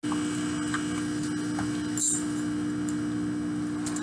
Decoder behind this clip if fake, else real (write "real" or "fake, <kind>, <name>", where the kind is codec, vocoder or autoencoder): real